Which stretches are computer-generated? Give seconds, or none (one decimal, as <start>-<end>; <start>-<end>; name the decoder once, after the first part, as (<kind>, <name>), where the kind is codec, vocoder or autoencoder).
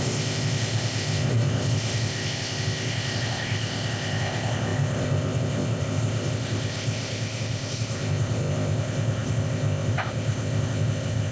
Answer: 0.0-11.3 (codec, ZipCodec)